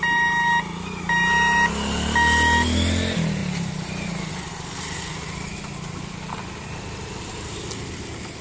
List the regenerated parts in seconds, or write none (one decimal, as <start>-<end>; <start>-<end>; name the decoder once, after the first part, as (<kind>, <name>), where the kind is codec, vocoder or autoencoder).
none